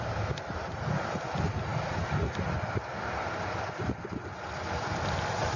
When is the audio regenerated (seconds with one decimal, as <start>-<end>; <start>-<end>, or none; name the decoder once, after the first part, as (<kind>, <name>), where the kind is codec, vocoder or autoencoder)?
none